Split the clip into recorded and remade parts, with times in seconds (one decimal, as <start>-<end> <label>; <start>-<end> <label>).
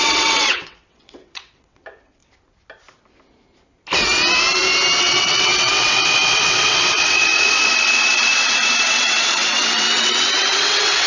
0.0-2.2 remade; 2.2-5.0 recorded; 5.0-11.1 remade